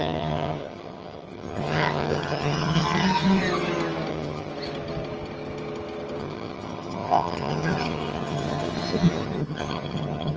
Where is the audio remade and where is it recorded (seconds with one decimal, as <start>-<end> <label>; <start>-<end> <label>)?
0.0-3.4 remade; 3.4-4.1 recorded; 4.1-4.5 remade; 4.5-6.2 recorded; 6.2-10.4 remade